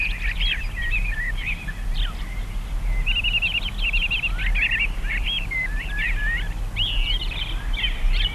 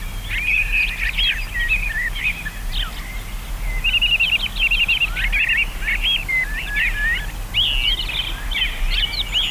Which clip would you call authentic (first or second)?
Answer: second